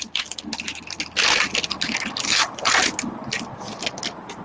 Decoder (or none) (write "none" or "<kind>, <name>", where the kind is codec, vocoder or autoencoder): none